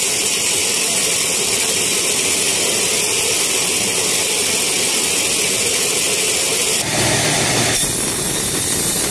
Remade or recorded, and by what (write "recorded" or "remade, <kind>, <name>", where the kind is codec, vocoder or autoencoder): recorded